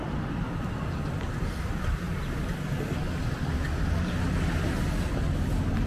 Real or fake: real